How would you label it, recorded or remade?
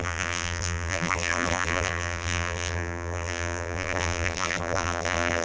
remade